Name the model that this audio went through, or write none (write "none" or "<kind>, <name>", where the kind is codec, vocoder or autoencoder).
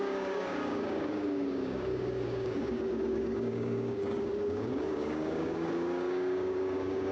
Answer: codec, DAC